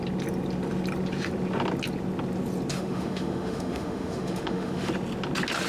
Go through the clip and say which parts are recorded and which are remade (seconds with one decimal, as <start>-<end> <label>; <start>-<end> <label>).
0.0-2.7 recorded; 2.7-4.9 remade; 4.9-5.7 recorded

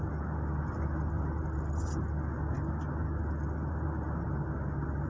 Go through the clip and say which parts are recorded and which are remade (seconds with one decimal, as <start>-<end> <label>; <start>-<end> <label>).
0.0-5.1 recorded

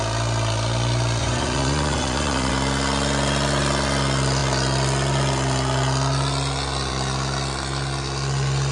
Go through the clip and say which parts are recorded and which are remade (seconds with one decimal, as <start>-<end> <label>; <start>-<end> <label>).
0.0-1.2 recorded; 1.2-2.5 remade; 2.5-8.7 recorded

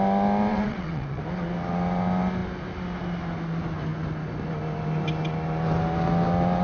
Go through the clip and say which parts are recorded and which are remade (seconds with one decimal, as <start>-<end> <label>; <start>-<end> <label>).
0.0-0.5 recorded; 0.5-1.2 remade; 1.2-6.6 recorded

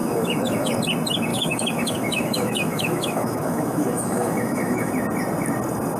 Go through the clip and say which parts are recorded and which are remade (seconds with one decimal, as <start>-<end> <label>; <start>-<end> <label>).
0.0-0.7 remade; 0.7-1.3 recorded; 1.3-4.9 remade; 4.9-6.0 recorded